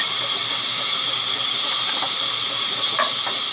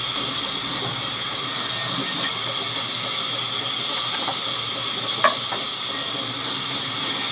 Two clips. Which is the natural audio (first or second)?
second